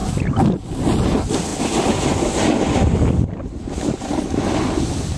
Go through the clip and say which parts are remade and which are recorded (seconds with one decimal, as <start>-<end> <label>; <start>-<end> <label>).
0.0-5.2 recorded